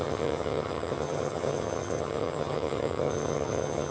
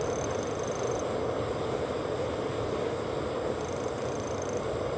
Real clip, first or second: second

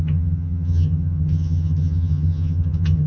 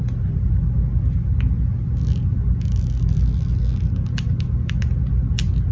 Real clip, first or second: second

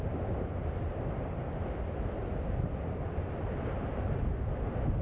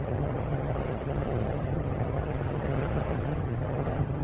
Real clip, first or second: first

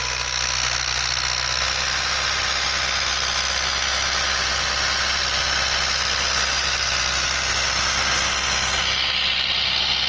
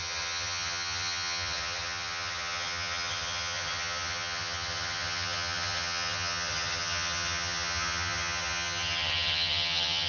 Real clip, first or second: first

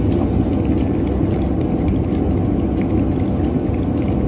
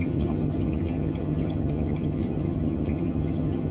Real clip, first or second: first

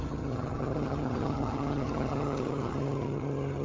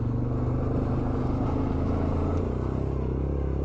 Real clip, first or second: second